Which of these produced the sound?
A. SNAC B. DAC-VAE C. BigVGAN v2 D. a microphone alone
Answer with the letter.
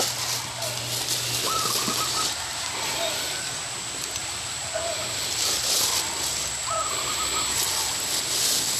D